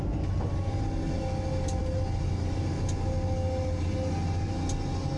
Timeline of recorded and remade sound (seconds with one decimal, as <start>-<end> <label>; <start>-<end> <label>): 0.0-5.2 recorded